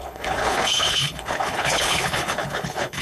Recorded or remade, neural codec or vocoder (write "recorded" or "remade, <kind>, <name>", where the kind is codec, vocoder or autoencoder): remade, codec, HILCodec